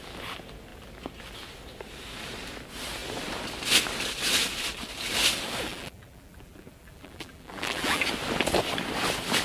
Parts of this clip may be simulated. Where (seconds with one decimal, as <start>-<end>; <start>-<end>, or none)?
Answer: 5.7-8.0